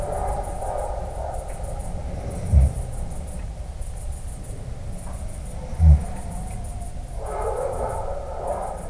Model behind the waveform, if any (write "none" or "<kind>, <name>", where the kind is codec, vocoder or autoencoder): none